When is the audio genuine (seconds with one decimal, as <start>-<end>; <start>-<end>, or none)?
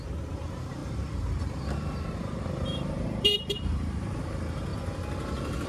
0.0-0.8; 4.2-5.7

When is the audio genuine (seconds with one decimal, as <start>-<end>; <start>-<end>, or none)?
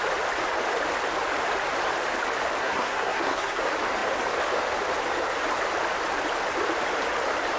0.0-2.6; 3.6-7.6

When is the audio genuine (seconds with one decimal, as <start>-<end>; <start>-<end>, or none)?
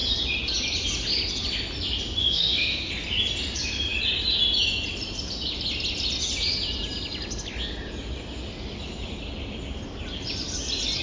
0.0-2.2; 2.9-11.0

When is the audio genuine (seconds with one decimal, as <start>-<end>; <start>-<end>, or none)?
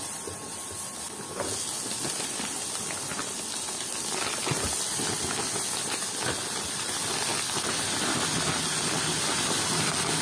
0.0-10.2